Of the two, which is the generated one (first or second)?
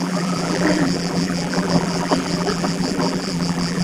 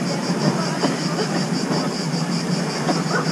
first